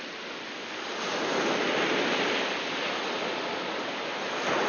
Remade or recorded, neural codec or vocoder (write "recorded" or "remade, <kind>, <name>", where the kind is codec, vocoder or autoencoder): recorded